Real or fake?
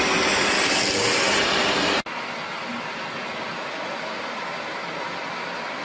real